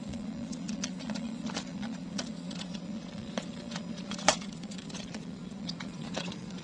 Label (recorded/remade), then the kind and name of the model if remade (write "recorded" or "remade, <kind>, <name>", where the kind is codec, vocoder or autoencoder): remade, vocoder, Vocos